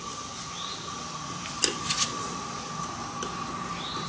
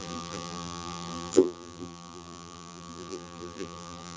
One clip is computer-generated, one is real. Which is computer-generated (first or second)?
second